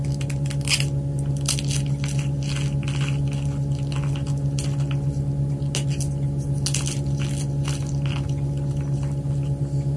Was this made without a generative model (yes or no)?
yes